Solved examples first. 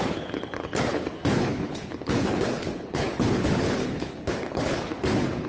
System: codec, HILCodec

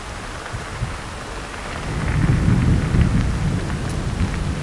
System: none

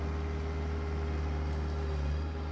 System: none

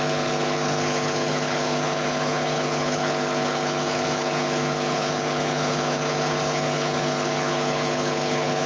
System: codec, HILCodec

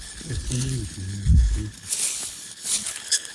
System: codec, HILCodec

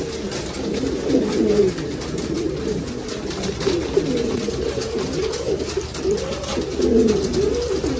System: none